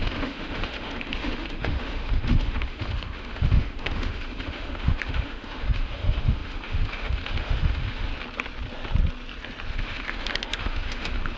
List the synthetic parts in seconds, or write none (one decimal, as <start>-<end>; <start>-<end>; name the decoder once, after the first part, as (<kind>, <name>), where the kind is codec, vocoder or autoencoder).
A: 0.0-8.1 (autoencoder, DAC-VAE); 9.7-11.4